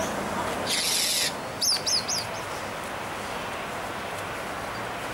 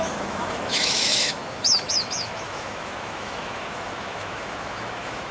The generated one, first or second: second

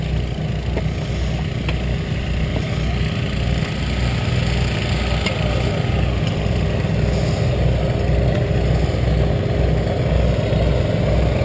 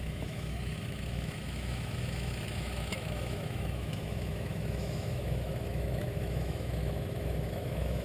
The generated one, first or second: second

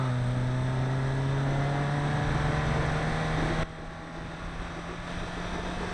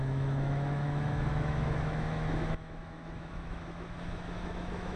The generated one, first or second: second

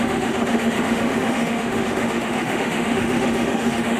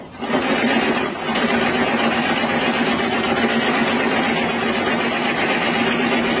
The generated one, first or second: first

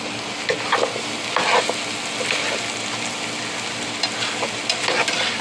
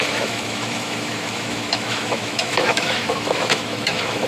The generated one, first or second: second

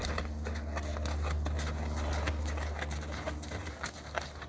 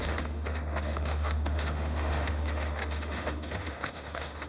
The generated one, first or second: second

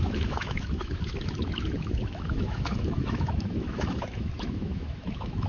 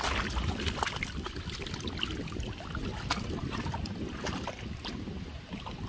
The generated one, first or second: first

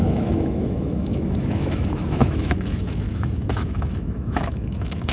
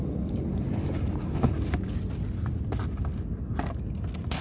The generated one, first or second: first